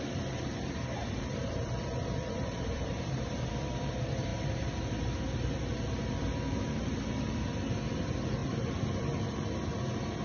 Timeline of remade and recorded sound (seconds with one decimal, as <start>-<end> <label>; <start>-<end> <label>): 0.0-8.4 remade; 8.4-9.0 recorded; 9.0-10.2 remade